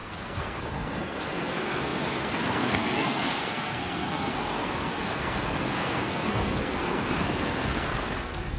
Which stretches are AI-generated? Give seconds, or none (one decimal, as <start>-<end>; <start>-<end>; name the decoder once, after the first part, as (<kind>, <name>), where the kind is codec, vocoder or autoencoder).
0.0-8.6 (codec, SNAC)